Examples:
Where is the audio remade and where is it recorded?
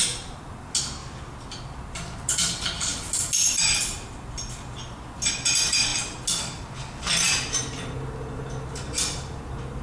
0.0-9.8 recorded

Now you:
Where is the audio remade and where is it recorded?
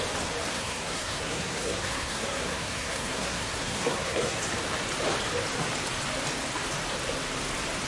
0.0-0.5 recorded; 0.5-4.4 remade; 4.4-7.9 recorded